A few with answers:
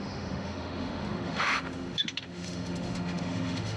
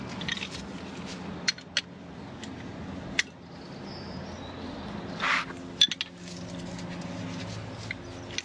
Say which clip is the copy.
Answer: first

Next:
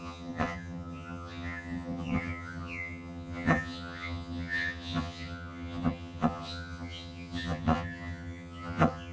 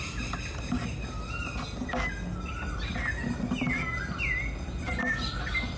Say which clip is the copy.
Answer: first